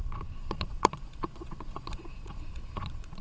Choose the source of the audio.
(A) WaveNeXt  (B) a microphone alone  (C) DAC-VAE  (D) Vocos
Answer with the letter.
D